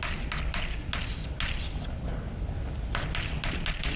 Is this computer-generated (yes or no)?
no